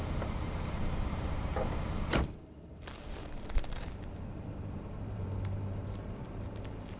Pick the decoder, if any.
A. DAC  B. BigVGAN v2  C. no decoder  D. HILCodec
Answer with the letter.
B